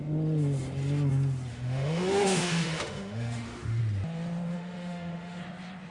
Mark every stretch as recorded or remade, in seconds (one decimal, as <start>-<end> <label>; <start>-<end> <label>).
0.0-1.5 recorded; 1.5-3.8 remade; 3.8-4.5 recorded; 4.5-5.4 remade; 5.4-5.9 recorded